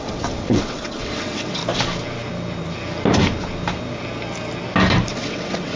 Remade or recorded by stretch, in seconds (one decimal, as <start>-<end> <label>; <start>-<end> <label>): 0.0-1.6 remade; 1.6-5.1 recorded; 5.1-5.8 remade